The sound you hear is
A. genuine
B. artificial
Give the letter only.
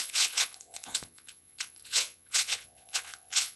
B